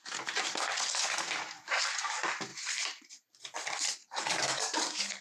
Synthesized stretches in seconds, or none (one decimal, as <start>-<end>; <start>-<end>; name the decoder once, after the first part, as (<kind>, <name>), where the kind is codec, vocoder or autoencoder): 4.0-5.2 (codec, DAC)